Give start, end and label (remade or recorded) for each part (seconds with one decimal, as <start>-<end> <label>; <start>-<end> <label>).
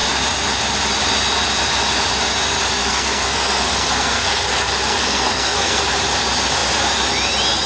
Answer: 0.0-2.8 recorded; 2.8-5.8 remade; 5.8-7.7 recorded